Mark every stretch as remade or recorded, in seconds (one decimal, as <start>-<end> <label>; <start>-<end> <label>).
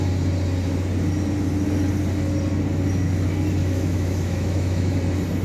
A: 0.0-3.6 recorded; 3.6-4.9 remade; 4.9-5.4 recorded